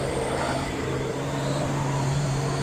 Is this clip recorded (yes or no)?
no